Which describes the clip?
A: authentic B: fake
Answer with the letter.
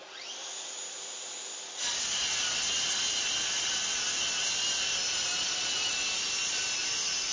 A